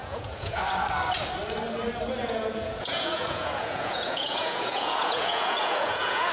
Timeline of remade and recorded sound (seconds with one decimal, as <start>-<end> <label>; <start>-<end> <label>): 0.0-0.6 remade; 0.6-2.2 recorded; 2.2-6.3 remade